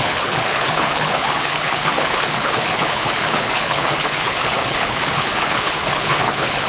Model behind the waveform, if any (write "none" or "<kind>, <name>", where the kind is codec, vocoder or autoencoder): codec, HILCodec